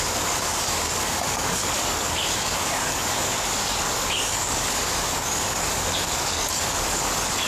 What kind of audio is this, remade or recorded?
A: remade